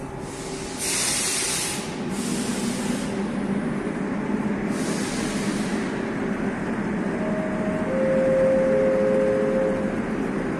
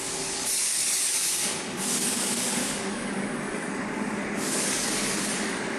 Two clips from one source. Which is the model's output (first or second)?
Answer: second